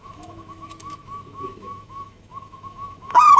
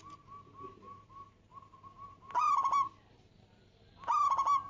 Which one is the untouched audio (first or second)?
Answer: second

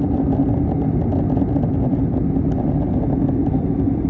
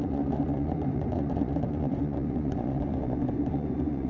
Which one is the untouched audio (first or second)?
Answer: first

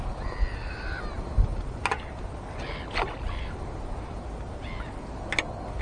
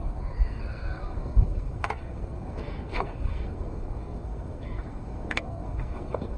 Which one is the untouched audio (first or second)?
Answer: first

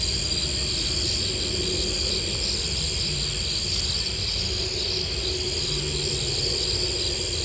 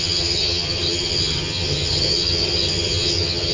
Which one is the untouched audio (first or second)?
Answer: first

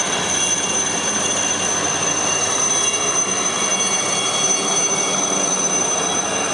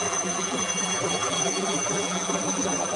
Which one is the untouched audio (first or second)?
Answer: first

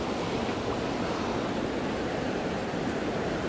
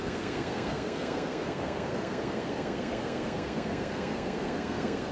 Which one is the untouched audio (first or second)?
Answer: first